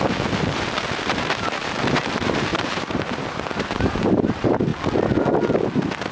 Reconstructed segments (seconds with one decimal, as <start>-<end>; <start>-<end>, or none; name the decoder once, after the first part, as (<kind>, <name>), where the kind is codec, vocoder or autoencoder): 0.0-4.7 (vocoder, BigVGAN v2)